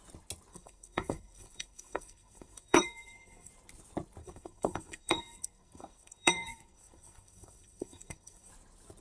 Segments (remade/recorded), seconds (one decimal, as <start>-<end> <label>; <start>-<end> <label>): 0.0-0.5 recorded; 0.5-3.5 remade; 3.5-4.2 recorded; 4.2-8.5 remade; 8.5-9.0 recorded